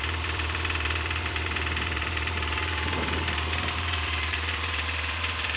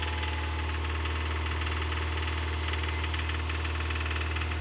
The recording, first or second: second